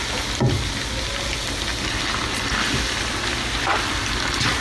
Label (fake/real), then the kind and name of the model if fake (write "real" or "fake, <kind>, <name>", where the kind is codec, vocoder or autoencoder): real